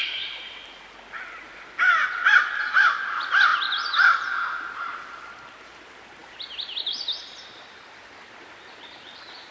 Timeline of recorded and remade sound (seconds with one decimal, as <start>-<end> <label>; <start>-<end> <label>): 0.0-9.5 recorded